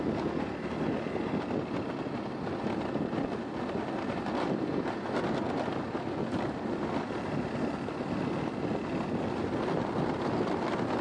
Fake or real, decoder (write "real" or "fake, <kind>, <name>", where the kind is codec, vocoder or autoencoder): real